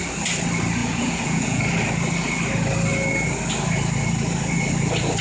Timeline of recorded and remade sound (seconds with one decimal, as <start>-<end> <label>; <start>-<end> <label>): 0.0-0.8 recorded; 0.8-1.6 remade; 1.6-5.2 recorded